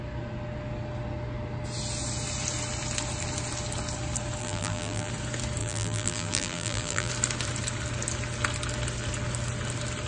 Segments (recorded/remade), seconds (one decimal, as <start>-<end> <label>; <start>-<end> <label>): 0.0-4.4 recorded; 4.4-5.1 remade; 5.1-5.6 recorded; 5.6-7.1 remade; 7.1-10.1 recorded